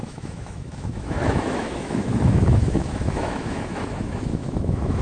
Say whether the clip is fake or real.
fake